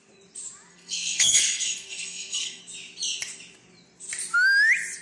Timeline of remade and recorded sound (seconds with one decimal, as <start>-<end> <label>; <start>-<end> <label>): 0.0-0.7 recorded; 0.7-2.6 remade; 2.6-5.0 recorded